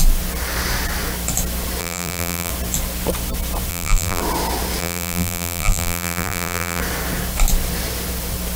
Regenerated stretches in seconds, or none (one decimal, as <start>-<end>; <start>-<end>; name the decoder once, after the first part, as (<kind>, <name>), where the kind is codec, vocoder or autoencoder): 1.8-2.5 (vocoder, BigVGAN v2); 3.7-4.2; 4.8-6.8